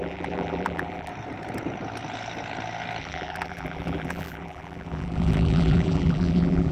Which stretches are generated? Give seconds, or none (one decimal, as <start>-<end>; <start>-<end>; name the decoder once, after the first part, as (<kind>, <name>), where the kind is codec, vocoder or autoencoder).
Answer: 0.0-1.1 (vocoder, BigVGAN v2); 3.0-6.7